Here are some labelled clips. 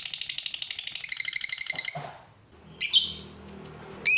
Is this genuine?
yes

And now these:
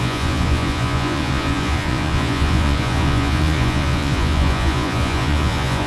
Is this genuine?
no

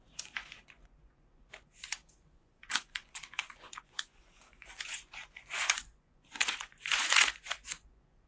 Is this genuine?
no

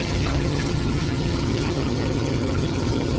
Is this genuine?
no